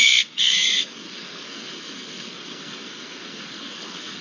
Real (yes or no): no